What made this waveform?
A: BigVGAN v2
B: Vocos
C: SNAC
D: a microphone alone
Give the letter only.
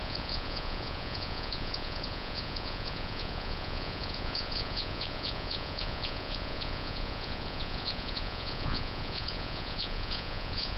B